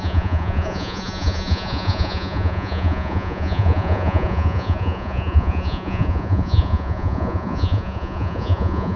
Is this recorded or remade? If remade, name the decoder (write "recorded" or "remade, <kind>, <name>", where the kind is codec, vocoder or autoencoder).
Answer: remade, vocoder, Vocos